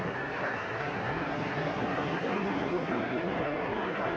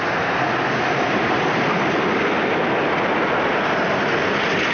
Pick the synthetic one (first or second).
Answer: first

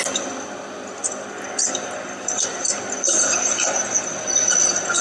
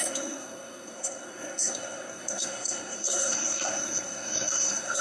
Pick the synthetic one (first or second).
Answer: second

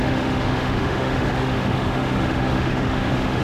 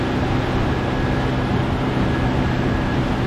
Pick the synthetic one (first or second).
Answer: first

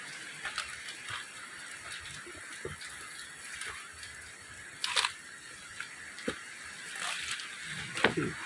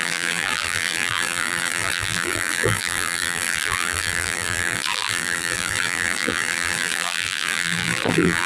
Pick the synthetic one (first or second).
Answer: second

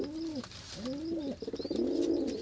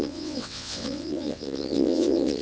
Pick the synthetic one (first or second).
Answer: second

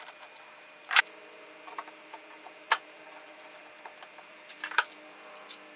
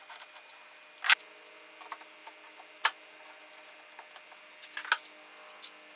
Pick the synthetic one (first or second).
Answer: first